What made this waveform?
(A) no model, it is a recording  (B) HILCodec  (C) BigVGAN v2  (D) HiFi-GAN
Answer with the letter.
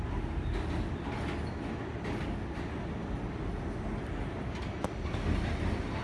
A